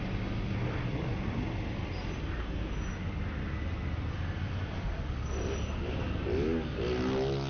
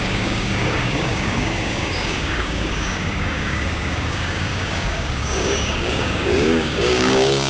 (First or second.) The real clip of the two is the first